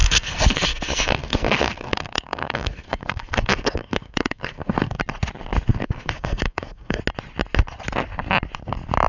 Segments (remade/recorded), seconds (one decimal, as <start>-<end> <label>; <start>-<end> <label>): 0.0-5.0 remade; 5.0-5.7 recorded; 5.7-7.0 remade; 7.0-9.1 recorded